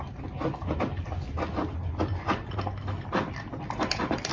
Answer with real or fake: real